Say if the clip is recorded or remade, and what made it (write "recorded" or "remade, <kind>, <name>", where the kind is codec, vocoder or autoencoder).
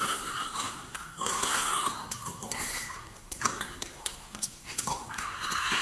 remade, codec, SNAC